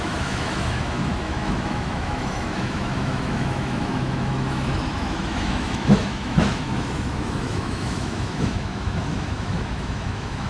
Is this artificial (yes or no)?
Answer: yes